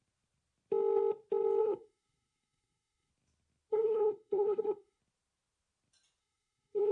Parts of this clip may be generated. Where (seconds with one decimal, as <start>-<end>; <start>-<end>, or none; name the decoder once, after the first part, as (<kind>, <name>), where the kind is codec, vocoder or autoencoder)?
1.6-3.1 (codec, SNAC); 3.7-5.0; 6.2-6.9